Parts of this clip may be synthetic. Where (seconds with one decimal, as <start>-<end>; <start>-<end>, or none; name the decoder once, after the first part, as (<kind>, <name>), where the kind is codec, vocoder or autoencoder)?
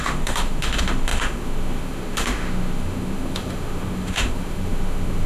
0.0-5.3 (autoencoder, DAC-VAE)